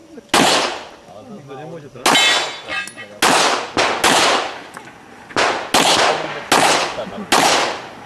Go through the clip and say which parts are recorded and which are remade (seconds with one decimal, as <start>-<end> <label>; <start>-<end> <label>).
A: 0.0-8.1 recorded